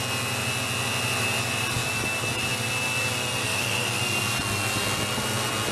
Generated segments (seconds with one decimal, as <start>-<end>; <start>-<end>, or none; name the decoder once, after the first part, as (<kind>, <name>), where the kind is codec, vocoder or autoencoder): 3.4-4.0 (codec, SNAC)